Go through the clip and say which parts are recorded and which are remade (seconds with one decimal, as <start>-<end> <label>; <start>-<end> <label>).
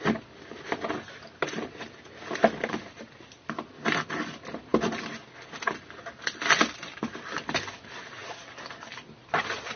0.0-9.8 recorded